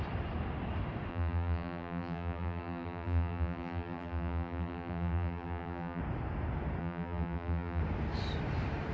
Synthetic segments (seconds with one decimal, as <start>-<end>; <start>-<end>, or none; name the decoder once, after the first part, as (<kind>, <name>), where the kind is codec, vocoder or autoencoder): 1.1-6.0 (vocoder, BigVGAN v2); 6.8-7.8